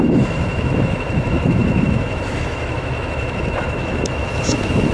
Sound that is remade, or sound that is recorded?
remade